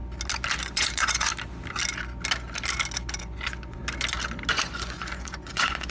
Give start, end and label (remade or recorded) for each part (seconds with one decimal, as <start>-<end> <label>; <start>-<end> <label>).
0.0-0.6 recorded; 0.6-1.3 remade; 1.3-3.2 recorded; 3.2-3.8 remade; 3.8-4.5 recorded; 4.5-5.9 remade